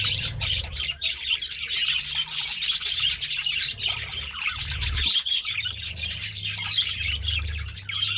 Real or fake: fake